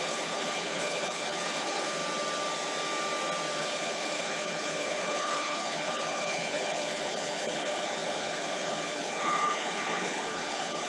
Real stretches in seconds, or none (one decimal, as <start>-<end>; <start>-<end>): 2.0-3.6